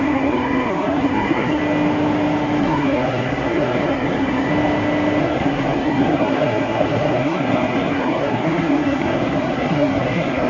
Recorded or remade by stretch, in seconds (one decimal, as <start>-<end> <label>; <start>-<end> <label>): 0.0-1.6 remade; 1.6-2.6 recorded; 2.6-4.5 remade; 4.5-5.2 recorded; 5.2-10.5 remade